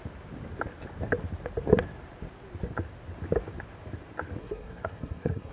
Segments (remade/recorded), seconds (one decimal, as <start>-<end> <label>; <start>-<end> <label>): 0.0-4.4 recorded; 4.4-5.5 remade